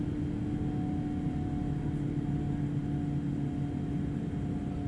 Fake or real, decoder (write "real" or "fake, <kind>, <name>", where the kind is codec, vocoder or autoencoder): real